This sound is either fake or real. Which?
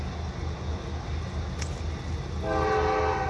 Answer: real